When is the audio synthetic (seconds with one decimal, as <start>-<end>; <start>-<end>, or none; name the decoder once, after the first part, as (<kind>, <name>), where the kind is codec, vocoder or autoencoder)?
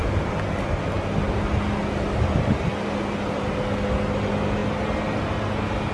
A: none